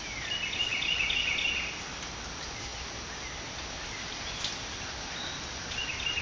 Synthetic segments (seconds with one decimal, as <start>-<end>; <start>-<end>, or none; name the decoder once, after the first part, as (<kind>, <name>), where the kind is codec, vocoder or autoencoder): none